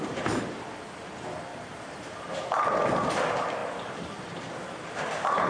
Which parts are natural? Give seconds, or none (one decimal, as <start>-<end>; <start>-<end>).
0.0-1.5; 2.4-3.6